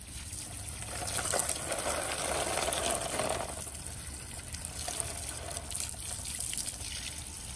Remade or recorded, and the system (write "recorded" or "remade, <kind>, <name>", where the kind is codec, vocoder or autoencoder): recorded